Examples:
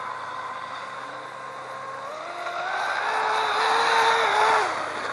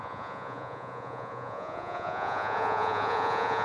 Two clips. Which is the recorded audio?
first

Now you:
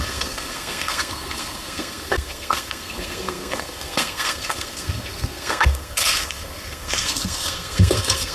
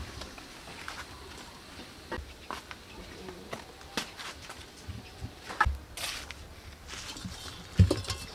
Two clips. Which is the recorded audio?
second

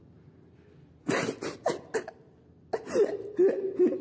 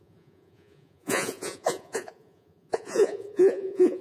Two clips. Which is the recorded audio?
first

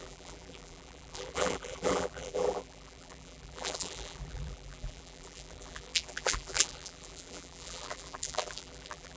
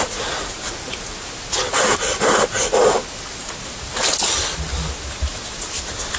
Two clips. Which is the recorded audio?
second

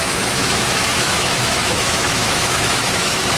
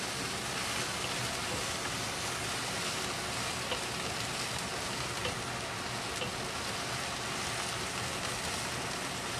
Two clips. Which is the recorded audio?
second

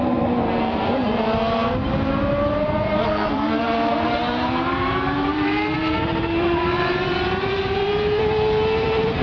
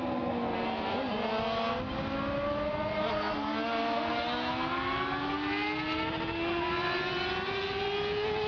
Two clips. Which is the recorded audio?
second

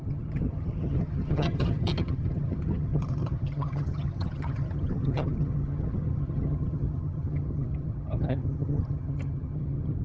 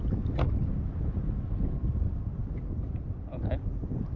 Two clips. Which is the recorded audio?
second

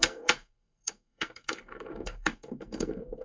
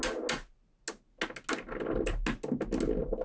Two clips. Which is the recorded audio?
second